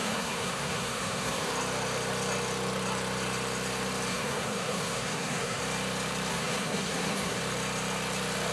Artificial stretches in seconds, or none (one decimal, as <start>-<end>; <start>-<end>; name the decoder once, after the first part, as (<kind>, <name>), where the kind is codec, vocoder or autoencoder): 0.0-1.5 (codec, SNAC); 4.1-5.6; 6.3-7.4